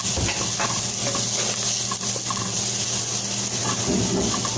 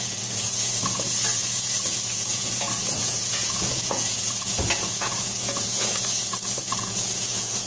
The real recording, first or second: first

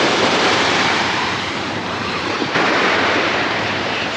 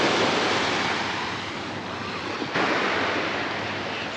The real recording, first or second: second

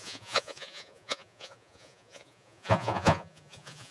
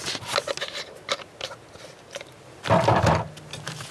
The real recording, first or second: second